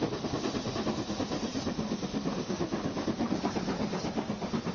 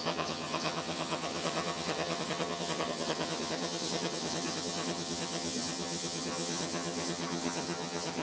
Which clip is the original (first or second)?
first